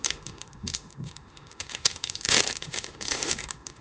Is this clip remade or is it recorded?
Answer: remade